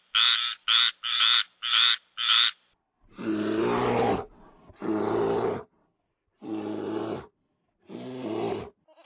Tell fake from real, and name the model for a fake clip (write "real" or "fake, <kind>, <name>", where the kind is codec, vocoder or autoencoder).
real